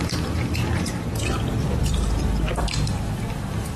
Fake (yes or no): yes